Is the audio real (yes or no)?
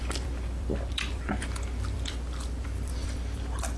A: no